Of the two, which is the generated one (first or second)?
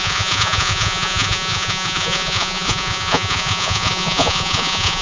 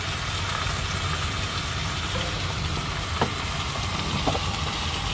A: first